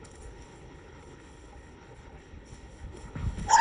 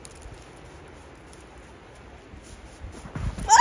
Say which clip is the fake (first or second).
first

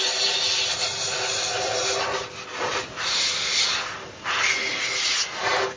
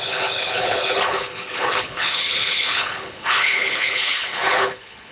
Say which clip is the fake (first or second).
second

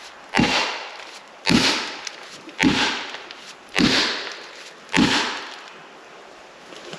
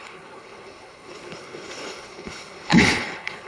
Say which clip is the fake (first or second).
second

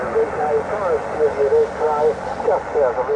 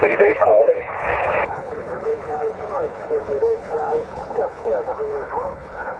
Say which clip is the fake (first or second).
second